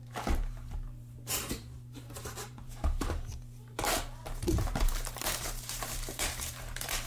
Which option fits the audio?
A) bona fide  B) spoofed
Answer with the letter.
B